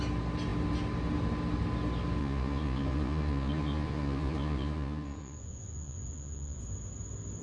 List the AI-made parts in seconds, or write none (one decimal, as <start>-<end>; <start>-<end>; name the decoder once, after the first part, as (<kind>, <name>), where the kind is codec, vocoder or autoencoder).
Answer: 2.2-6.6 (vocoder, Vocos)